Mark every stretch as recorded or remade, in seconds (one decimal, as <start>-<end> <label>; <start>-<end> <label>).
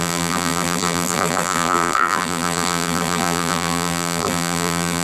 0.0-5.0 remade